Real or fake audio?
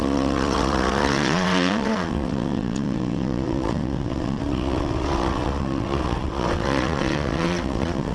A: fake